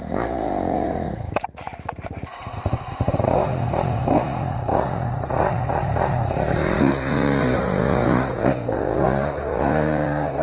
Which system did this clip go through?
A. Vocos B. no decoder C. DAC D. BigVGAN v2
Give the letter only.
A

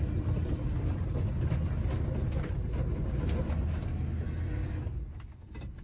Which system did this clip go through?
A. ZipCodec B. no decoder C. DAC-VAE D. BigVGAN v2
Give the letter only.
B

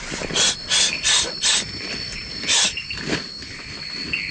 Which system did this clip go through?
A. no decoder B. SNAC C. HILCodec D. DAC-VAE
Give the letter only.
A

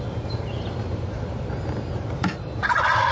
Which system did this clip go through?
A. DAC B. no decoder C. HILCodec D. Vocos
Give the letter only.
B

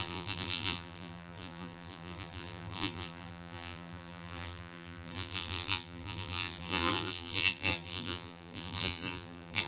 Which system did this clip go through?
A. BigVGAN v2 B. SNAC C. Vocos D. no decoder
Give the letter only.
A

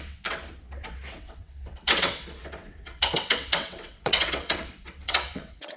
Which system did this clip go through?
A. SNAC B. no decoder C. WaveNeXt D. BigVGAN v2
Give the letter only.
C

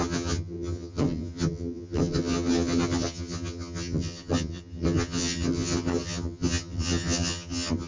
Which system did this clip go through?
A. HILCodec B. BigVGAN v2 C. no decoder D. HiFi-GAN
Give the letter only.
D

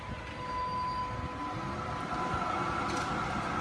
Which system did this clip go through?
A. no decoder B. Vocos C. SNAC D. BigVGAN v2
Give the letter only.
A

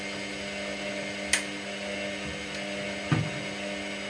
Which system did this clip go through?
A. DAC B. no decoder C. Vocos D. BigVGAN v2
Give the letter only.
B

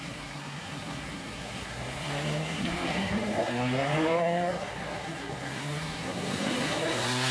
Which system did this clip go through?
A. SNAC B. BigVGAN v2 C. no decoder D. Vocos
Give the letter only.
A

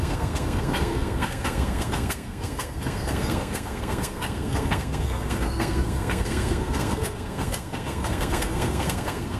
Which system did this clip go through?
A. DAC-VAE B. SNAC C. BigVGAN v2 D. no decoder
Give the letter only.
B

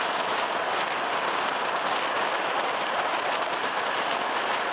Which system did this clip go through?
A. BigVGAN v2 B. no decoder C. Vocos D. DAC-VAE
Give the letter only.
B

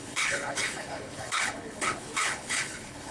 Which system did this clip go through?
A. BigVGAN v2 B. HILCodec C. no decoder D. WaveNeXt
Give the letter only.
B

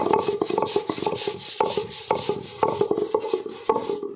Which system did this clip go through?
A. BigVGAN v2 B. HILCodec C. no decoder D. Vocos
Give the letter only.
C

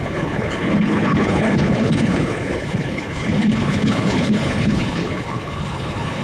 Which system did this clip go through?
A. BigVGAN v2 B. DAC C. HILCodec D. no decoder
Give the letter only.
C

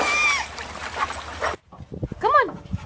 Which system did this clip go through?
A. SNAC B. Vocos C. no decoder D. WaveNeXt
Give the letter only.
C